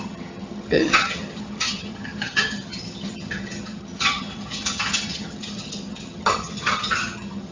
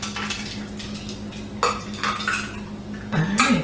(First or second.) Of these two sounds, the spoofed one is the first